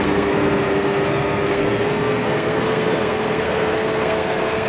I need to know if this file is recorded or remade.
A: remade